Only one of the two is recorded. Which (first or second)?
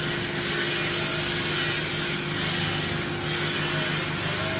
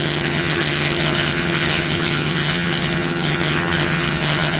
first